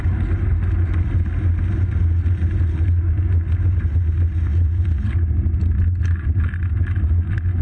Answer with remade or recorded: recorded